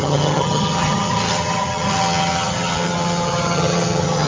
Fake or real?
fake